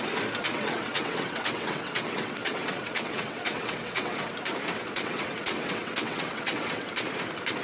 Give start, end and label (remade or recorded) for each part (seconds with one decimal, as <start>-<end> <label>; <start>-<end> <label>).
0.0-0.5 recorded; 0.5-4.3 remade; 4.3-4.8 recorded; 4.8-6.9 remade; 6.9-7.6 recorded